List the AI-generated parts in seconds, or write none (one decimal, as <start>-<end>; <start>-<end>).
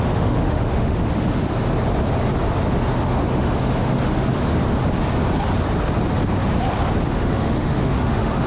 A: 0.0-1.4; 3.0-4.5; 7.1-8.5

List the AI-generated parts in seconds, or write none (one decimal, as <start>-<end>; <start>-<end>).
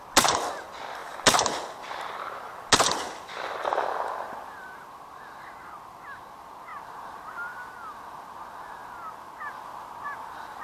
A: none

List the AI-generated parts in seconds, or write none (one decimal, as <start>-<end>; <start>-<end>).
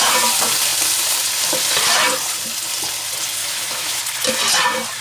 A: 3.4-4.0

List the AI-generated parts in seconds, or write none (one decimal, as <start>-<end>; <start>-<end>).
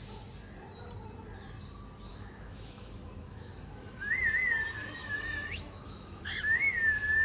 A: 2.1-4.1; 5.0-6.4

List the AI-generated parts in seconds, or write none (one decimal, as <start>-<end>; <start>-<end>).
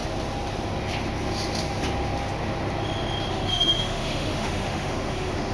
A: 3.3-5.5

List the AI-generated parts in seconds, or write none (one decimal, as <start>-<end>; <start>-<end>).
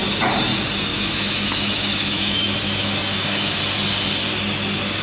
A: 0.9-3.6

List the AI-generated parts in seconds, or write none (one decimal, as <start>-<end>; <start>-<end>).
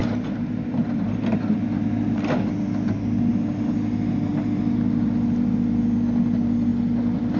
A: none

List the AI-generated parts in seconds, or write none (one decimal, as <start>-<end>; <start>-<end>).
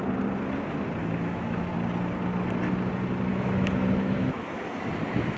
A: 1.0-1.7; 3.3-4.9